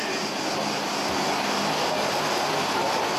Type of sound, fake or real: real